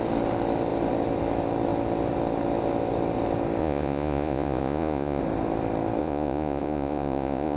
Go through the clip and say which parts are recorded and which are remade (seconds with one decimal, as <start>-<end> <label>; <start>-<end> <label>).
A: 0.0-3.6 recorded; 3.6-5.2 remade; 5.2-6.0 recorded; 6.0-7.6 remade